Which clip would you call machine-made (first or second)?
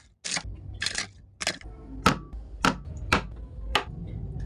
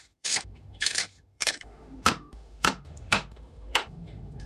second